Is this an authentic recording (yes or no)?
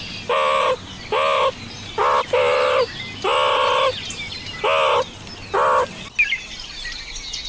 yes